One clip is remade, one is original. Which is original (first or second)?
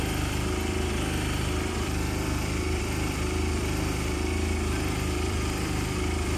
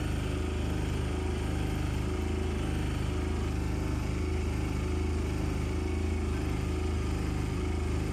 second